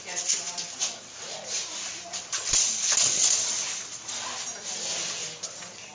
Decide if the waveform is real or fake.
real